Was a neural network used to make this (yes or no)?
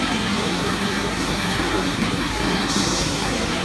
yes